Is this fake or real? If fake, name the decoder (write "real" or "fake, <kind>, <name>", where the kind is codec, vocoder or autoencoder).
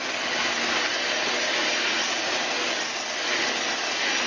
real